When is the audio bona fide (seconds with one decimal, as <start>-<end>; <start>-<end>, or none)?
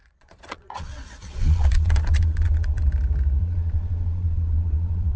2.9-3.4